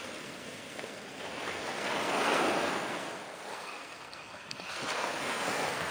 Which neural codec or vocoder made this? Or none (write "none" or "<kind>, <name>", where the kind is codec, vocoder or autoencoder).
codec, SNAC